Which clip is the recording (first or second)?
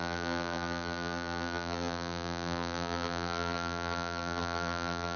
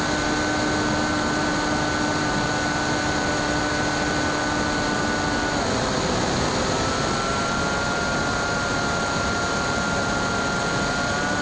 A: second